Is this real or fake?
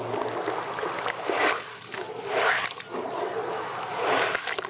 real